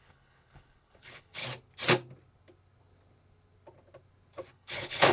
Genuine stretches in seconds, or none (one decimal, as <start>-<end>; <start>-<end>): 1.4-4.5